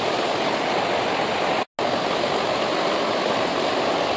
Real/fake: real